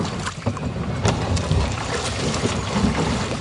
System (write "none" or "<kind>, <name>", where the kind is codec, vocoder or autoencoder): none